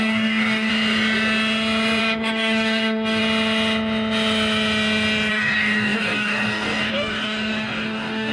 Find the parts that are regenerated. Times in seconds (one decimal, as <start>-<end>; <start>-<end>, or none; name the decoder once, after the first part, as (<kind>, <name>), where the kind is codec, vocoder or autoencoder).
0.0-0.7 (codec, DAC); 2.0-3.2; 5.3-8.3